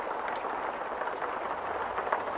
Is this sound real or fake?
real